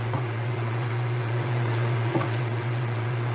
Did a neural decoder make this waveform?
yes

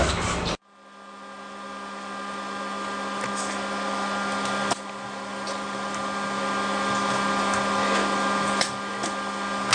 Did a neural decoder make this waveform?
no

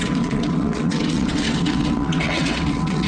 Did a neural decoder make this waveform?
yes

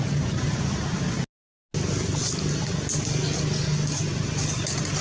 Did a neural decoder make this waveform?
no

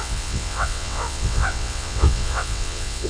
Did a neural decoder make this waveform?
yes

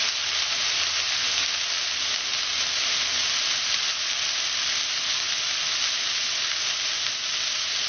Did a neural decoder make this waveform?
no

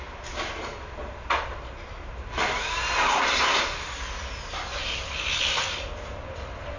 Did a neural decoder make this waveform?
no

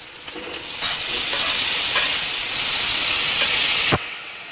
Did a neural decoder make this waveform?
yes